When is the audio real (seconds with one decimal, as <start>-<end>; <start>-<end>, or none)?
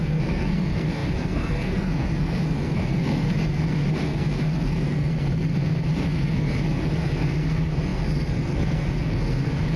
none